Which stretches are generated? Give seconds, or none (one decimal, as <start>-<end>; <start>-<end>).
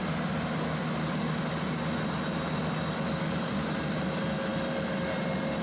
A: none